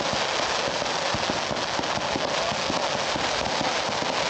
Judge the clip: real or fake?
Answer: real